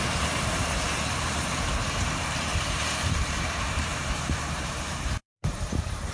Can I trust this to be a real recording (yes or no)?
no